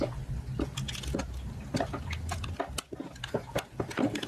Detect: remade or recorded recorded